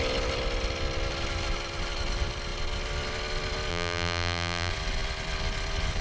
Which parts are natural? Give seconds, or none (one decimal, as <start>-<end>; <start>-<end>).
0.0-3.7; 4.7-6.0